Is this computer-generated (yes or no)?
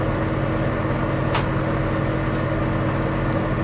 no